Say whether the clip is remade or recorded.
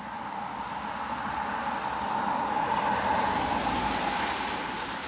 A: recorded